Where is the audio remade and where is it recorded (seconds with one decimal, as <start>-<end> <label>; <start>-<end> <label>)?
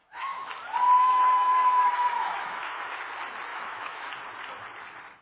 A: 0.0-0.5 remade; 0.5-1.0 recorded; 1.0-3.0 remade; 3.0-3.5 recorded; 3.5-4.1 remade; 4.1-5.2 recorded